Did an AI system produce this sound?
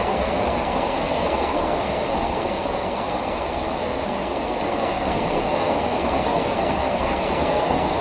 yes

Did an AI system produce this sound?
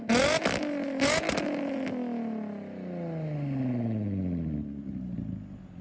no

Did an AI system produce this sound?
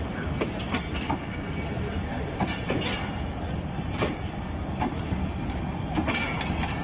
no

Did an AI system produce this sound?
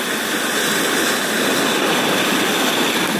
no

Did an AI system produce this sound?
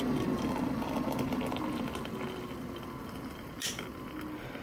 no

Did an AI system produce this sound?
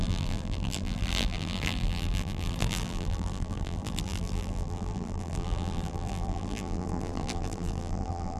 yes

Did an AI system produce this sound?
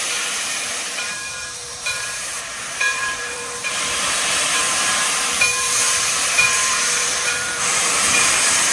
yes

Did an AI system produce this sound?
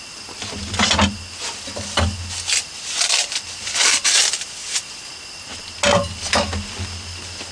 no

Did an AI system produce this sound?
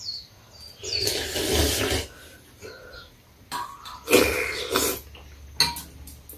no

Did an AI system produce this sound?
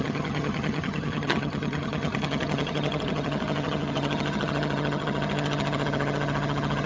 yes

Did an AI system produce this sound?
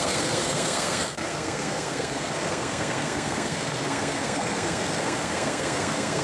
yes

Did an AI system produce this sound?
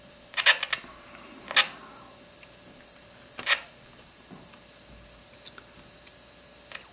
no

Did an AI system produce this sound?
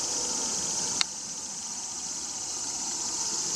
no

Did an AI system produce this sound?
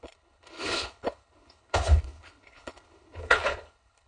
yes